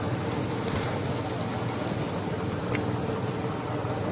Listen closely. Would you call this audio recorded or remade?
recorded